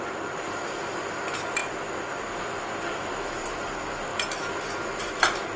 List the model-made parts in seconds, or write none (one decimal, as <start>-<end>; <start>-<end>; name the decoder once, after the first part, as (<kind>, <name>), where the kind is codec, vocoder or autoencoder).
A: 0.0-1.6 (vocoder, BigVGAN v2); 2.3-4.1; 5.0-5.6